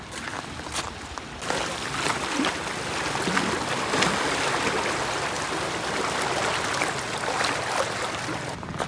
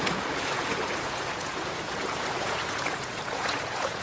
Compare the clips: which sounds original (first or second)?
first